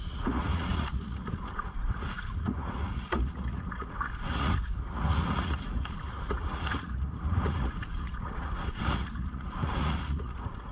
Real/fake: fake